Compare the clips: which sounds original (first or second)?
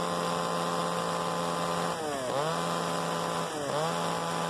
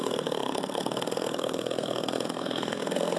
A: first